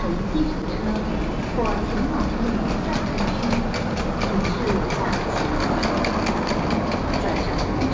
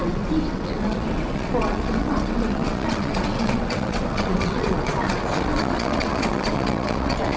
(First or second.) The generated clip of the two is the second